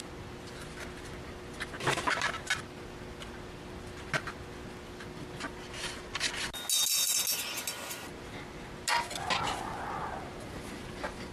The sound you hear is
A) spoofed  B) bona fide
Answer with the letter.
B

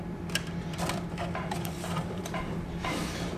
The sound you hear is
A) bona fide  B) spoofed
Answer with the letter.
B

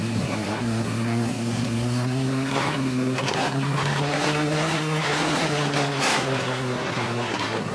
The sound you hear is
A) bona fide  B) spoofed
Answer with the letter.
B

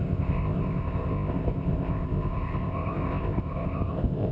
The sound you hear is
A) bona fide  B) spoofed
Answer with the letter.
B